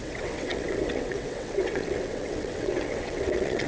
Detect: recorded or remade remade